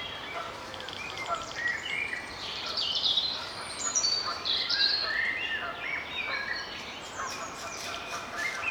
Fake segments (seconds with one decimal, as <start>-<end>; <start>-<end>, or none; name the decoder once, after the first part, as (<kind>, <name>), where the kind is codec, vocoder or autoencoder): 0.0-5.0 (vocoder, BigVGAN v2); 6.0-8.7